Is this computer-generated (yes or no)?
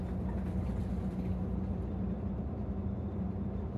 no